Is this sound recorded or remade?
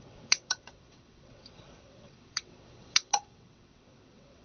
remade